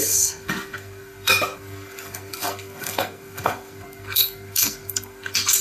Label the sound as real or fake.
fake